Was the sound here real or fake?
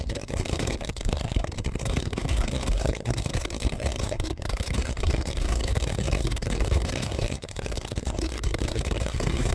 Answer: fake